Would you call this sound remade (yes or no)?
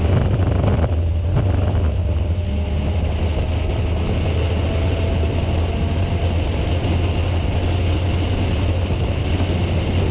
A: no